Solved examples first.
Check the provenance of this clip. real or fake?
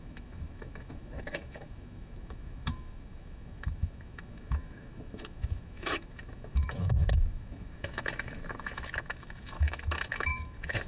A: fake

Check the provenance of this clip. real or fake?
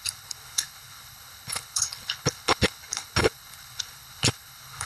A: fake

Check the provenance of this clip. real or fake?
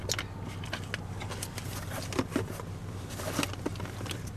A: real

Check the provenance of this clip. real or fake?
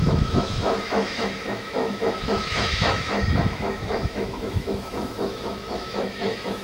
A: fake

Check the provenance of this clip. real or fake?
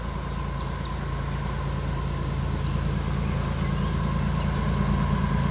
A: real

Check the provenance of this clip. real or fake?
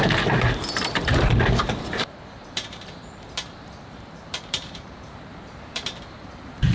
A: fake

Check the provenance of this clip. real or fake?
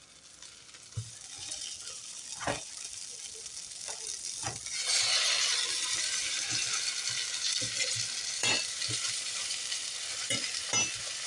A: fake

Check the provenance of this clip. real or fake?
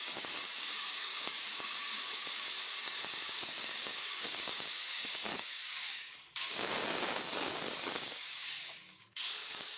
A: fake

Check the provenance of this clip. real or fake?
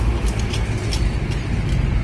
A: real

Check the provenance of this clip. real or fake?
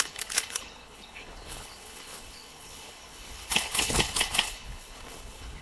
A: fake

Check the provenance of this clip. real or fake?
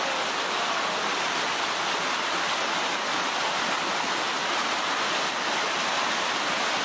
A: real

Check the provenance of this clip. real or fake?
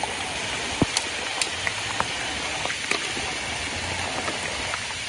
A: real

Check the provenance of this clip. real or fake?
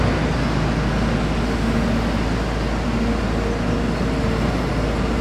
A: real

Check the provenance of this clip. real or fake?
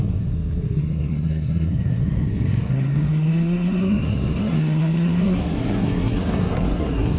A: fake